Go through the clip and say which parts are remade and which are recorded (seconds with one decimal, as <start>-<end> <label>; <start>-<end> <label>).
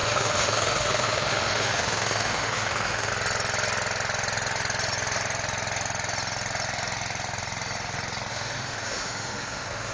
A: 0.0-3.1 remade; 3.1-8.3 recorded; 8.3-9.9 remade